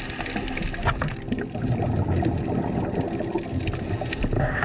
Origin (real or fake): real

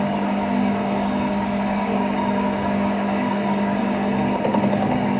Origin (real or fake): fake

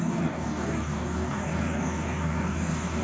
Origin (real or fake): fake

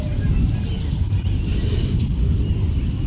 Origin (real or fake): real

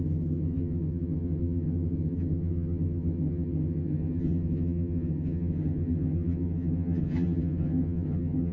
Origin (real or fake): fake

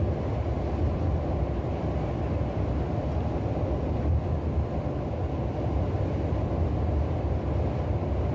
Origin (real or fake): real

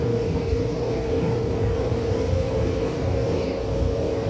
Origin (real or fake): fake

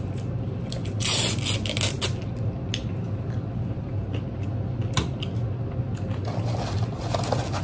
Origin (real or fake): real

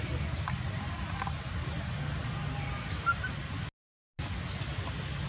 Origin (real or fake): real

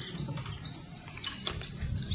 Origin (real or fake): real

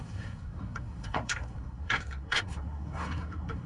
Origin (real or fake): fake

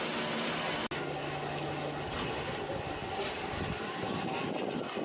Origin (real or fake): real